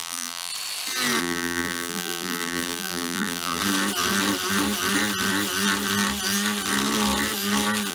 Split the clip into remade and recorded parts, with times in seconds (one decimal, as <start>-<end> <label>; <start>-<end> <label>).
0.0-0.5 remade; 0.5-1.2 recorded; 1.2-3.6 remade; 3.6-7.9 recorded